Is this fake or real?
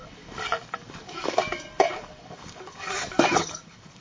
fake